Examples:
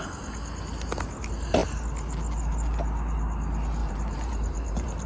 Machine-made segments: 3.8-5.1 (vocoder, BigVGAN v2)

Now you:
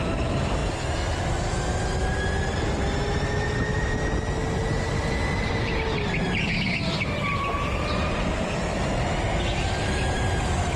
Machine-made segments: none

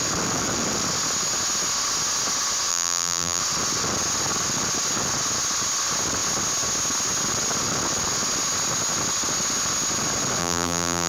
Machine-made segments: 2.7-3.4 (vocoder, BigVGAN v2); 10.4-11.1

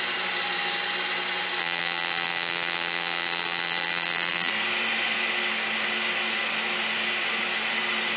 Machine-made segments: 1.6-4.5 (vocoder, BigVGAN v2)

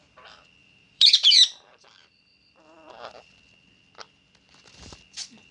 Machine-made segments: 0.6-2.1 (vocoder, BigVGAN v2)

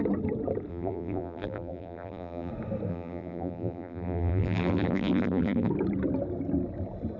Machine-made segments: 0.7-2.5 (vocoder, BigVGAN v2); 2.9-5.7

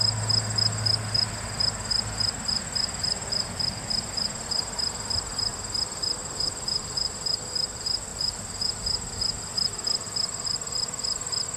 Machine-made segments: 6.2-7.1 (vocoder, BigVGAN v2); 8.1-8.8